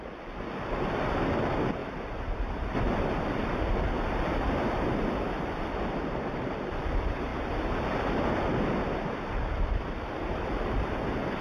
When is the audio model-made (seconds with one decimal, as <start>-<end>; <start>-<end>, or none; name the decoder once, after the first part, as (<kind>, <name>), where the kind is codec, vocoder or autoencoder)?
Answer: none